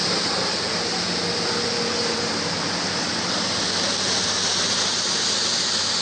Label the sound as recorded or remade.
recorded